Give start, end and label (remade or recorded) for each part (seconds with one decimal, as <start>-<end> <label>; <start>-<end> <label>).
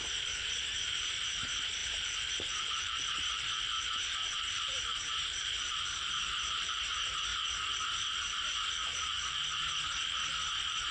0.0-3.3 remade; 3.3-4.5 recorded; 4.5-7.3 remade; 7.3-10.9 recorded